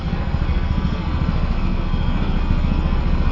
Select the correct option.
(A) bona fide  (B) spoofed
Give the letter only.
B